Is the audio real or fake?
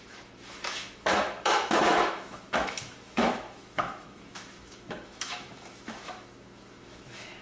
fake